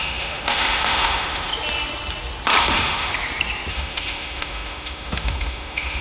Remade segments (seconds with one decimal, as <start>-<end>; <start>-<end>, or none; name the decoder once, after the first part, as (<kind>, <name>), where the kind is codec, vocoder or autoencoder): 0.0-1.5 (autoencoder, DAC-VAE); 2.6-3.1; 3.7-6.0